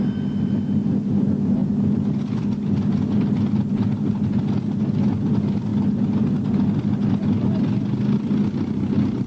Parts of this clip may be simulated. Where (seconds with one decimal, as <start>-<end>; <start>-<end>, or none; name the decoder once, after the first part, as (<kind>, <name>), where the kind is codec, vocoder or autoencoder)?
none